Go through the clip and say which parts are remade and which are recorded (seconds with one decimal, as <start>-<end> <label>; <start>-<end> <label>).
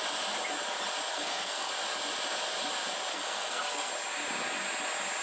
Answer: 0.0-1.1 recorded; 1.1-1.7 remade; 1.7-3.1 recorded; 3.1-3.9 remade; 3.9-5.2 recorded